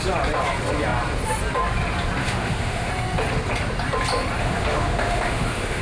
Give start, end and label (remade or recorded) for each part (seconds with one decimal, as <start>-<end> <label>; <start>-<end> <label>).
0.0-2.2 recorded; 2.2-2.9 remade; 2.9-4.4 recorded; 4.4-5.8 remade